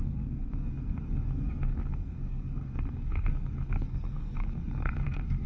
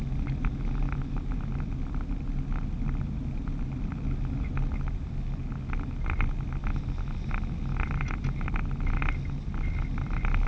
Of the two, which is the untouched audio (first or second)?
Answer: second